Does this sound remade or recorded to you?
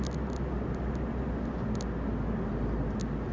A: recorded